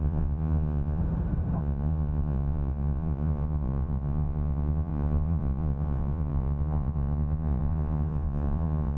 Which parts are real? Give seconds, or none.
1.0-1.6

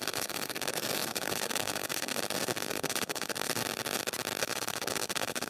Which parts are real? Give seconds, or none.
3.6-4.4

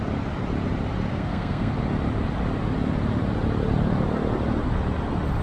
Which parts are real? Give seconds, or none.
0.0-1.1; 1.7-5.4

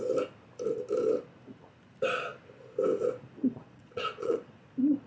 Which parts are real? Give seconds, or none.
0.0-3.4